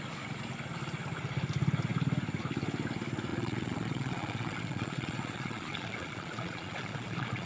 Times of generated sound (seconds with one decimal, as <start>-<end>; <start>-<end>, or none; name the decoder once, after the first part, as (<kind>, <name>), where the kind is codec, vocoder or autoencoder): 3.3-7.5 (vocoder, Vocos)